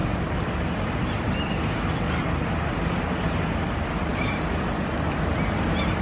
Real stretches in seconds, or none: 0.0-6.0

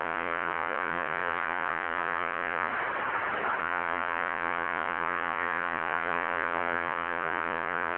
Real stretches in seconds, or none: 2.7-3.6